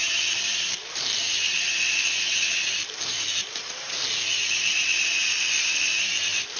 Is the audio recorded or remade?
remade